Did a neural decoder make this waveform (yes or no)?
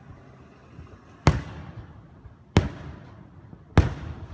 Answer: no